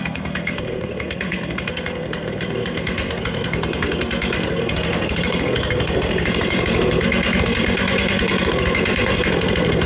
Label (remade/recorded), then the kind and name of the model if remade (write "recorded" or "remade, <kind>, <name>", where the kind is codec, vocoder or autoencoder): remade, codec, SNAC